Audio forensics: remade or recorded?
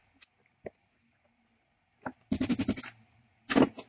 recorded